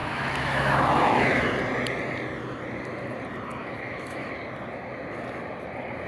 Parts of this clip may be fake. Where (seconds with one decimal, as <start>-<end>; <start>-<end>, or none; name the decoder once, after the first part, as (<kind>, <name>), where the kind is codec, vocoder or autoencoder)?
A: 0.0-1.5 (autoencoder, DAC-VAE); 3.6-4.3